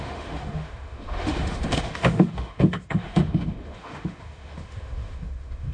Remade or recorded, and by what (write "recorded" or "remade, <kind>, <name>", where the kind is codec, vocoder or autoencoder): remade, autoencoder, DAC-VAE